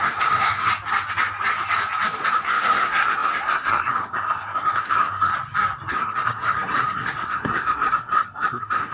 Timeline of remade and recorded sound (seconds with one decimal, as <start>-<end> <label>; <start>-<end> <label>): 0.0-0.7 remade; 0.7-2.4 recorded; 2.4-5.3 remade; 5.3-5.9 recorded; 5.9-8.9 remade

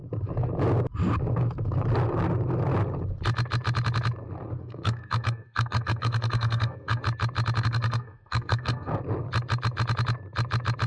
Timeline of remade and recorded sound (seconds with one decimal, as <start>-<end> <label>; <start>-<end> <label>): 0.0-4.6 recorded; 4.6-7.0 remade; 7.0-7.6 recorded; 7.6-8.9 remade; 8.9-10.9 recorded

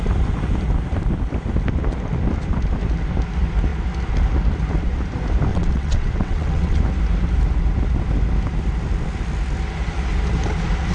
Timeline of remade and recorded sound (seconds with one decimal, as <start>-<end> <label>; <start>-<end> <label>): 0.0-5.5 recorded; 5.5-6.8 remade; 6.8-10.9 recorded

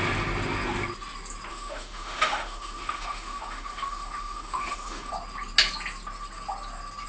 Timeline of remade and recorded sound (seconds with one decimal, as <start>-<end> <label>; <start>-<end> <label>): 0.0-1.5 recorded; 1.5-5.1 remade; 5.1-7.1 recorded

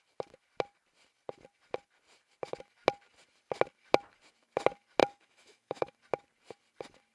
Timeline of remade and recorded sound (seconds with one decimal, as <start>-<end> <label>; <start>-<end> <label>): 0.0-5.0 recorded; 5.0-5.9 remade; 5.9-7.1 recorded

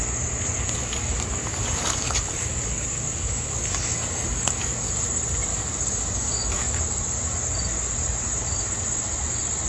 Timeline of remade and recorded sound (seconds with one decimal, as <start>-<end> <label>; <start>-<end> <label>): 0.0-0.8 recorded; 0.8-4.9 remade; 4.9-5.5 recorded; 5.5-6.8 remade; 6.8-9.7 recorded

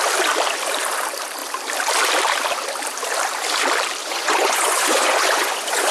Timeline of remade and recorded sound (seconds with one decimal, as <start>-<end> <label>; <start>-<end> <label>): 0.0-4.0 recorded; 4.0-5.9 remade

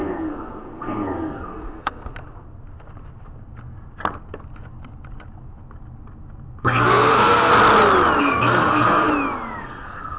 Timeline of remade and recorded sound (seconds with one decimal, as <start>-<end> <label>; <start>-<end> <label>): 0.0-2.1 remade; 2.1-6.6 recorded; 6.6-7.5 remade; 7.5-8.2 recorded; 8.2-9.1 remade; 9.1-9.6 recorded; 9.6-10.2 remade